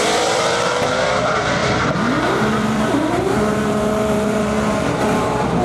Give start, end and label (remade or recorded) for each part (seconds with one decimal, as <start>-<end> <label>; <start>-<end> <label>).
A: 0.0-1.6 recorded; 1.6-5.0 remade; 5.0-5.6 recorded